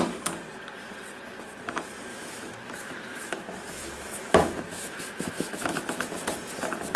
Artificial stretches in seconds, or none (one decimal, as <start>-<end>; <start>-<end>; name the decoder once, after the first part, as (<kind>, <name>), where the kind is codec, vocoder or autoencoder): 2.1-6.0 (autoencoder, DAC-VAE)